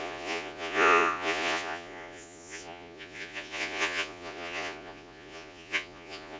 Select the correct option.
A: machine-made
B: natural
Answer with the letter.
A